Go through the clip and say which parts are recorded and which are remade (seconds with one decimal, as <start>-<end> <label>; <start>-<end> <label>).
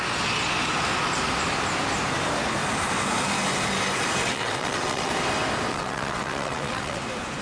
0.0-4.2 recorded; 4.2-5.1 remade; 5.1-5.7 recorded; 5.7-7.0 remade; 7.0-7.4 recorded